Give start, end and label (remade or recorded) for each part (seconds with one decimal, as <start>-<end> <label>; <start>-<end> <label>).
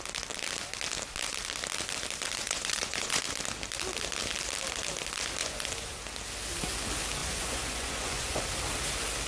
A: 0.0-2.4 recorded; 2.4-3.2 remade; 3.2-5.4 recorded; 5.4-6.0 remade; 6.0-7.2 recorded; 7.2-8.4 remade; 8.4-9.3 recorded